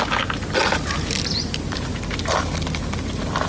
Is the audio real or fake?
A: real